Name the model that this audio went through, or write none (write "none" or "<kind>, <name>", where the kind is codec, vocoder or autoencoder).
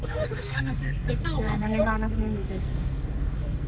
codec, SNAC